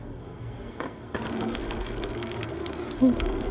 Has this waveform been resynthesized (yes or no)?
yes